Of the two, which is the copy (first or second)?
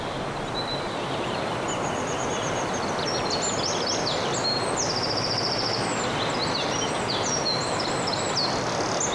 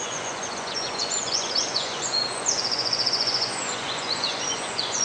second